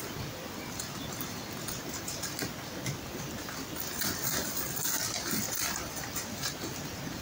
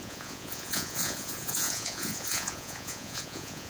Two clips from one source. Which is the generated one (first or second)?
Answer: second